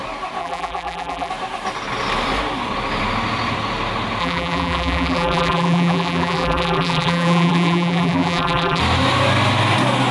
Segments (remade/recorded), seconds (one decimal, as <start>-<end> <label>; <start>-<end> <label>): 0.0-0.4 recorded; 0.4-1.3 remade; 1.3-4.2 recorded; 4.2-8.8 remade; 8.8-10.1 recorded

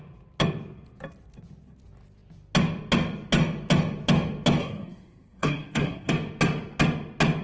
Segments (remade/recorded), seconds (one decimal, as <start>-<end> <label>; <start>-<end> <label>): 0.0-4.6 recorded; 4.6-6.1 remade; 6.1-7.4 recorded

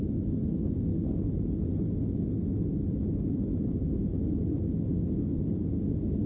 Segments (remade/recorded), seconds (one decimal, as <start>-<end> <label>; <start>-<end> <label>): 0.0-6.3 recorded

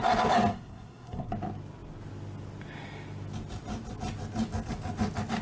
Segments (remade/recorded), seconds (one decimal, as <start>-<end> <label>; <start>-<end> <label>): 0.0-0.5 recorded; 0.5-1.3 remade; 1.3-5.4 recorded

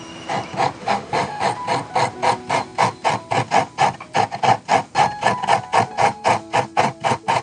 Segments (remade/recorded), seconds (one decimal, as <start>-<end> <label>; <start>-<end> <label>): 0.0-0.8 recorded; 0.8-1.4 remade; 1.4-7.4 recorded

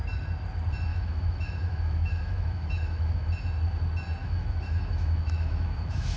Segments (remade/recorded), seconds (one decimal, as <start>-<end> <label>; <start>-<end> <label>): 0.0-0.9 recorded; 0.9-3.3 remade; 3.3-4.2 recorded; 4.2-6.2 remade

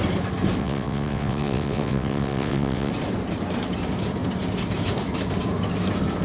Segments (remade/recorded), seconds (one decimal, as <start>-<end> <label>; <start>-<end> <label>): 0.0-0.6 recorded; 0.6-2.9 remade; 2.9-6.2 recorded